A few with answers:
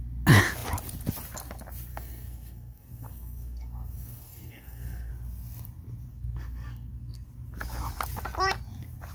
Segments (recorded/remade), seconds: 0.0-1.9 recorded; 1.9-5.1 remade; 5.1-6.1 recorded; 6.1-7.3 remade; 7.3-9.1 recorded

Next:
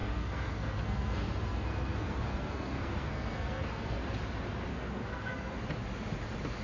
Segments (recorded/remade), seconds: 0.0-4.0 remade; 4.0-4.7 recorded; 4.7-5.5 remade; 5.5-6.6 recorded

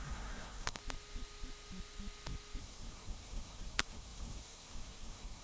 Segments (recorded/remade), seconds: 0.0-0.8 remade; 0.8-2.6 recorded; 2.6-5.4 remade